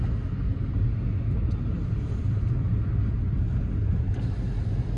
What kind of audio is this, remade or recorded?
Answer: recorded